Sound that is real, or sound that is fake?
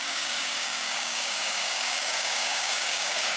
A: fake